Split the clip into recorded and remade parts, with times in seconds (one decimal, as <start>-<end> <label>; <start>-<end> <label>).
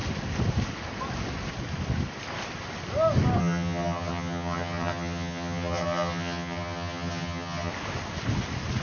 0.0-3.4 recorded; 3.4-7.7 remade; 7.7-8.8 recorded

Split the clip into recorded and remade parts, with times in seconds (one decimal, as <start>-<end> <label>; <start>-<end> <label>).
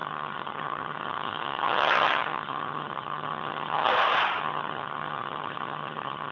0.0-3.9 remade; 3.9-4.4 recorded; 4.4-6.3 remade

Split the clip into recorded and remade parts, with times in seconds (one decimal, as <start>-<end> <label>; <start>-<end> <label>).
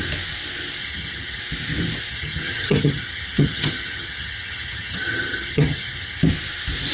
0.0-0.8 recorded; 0.8-1.4 remade; 1.4-2.1 recorded; 2.1-6.2 remade; 6.2-6.9 recorded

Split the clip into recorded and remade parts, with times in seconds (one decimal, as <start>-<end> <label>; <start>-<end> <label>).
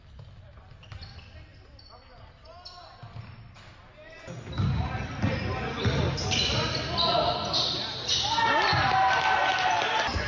0.0-10.3 recorded